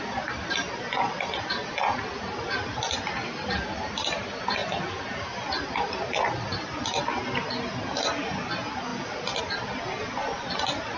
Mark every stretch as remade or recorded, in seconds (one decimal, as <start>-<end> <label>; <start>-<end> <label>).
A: 0.0-11.0 recorded